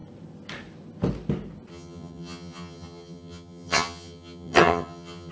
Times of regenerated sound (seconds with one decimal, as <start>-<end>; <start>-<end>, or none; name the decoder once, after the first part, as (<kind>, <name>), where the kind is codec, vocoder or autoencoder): 1.7-5.3 (vocoder, HiFi-GAN)